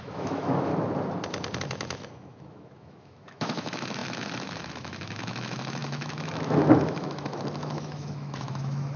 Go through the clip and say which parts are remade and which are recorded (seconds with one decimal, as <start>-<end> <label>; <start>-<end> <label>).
0.0-0.7 remade; 0.7-1.6 recorded; 1.6-9.0 remade